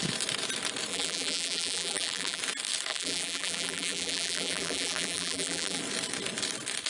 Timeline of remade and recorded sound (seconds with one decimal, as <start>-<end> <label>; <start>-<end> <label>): 0.0-0.9 recorded; 0.9-2.4 remade; 2.4-2.9 recorded; 2.9-5.8 remade; 5.8-6.9 recorded